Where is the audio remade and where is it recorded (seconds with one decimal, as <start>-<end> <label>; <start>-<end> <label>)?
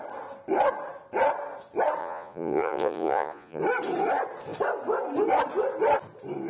0.0-2.0 recorded; 2.0-3.6 remade; 3.6-6.5 recorded